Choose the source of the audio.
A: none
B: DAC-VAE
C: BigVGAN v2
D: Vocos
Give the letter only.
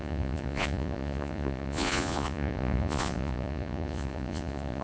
D